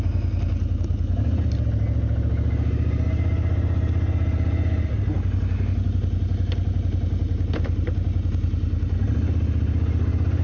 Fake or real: real